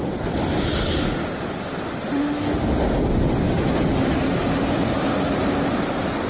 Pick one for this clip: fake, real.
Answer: real